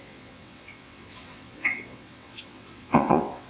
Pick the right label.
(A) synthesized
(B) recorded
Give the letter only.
A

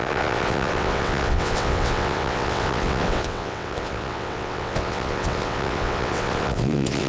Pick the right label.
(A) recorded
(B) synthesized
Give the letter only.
B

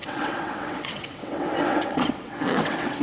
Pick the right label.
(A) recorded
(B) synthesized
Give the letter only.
B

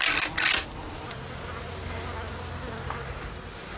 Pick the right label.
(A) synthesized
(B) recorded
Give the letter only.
B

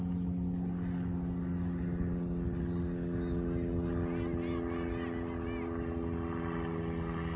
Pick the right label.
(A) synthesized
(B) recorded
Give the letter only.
B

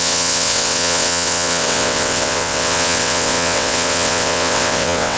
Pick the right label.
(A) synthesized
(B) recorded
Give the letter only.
A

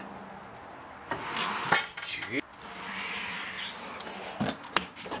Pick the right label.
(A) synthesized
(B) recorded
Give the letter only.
B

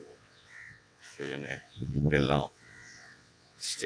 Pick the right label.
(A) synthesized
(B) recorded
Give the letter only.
A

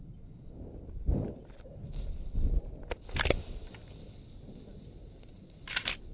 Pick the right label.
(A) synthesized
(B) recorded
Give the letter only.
B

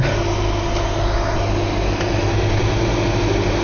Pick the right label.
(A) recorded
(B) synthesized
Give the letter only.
A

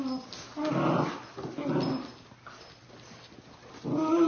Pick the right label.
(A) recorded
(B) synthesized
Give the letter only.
A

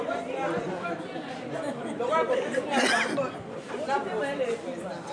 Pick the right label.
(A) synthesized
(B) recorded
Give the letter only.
B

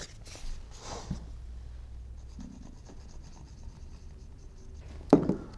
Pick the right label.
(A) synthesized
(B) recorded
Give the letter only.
B